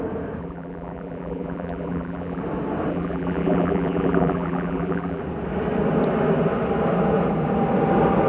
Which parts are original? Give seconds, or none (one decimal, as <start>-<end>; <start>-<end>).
0.0-0.4; 2.4-2.9; 5.2-8.3